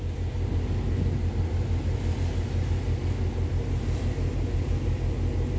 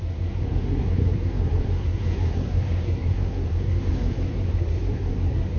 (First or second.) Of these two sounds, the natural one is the first